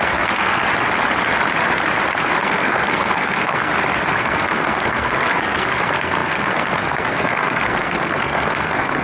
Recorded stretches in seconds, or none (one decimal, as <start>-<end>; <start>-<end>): 0.7-2.4; 3.7-4.2